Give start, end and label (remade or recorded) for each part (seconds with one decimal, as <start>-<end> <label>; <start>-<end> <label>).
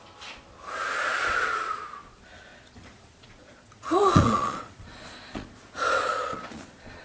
0.0-0.9 recorded; 0.9-1.8 remade; 1.8-2.5 recorded; 2.5-7.0 remade